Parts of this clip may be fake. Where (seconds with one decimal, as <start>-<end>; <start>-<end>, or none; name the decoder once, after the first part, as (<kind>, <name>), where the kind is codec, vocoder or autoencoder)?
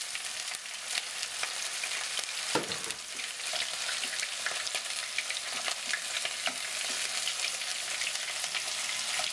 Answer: 0.0-9.3 (vocoder, BigVGAN v2)